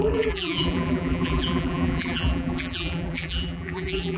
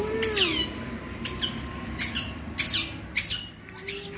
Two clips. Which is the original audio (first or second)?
second